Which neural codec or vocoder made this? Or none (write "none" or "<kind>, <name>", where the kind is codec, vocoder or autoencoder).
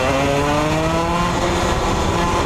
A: none